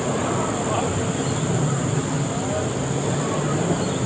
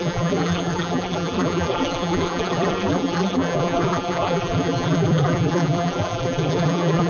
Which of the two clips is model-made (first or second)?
second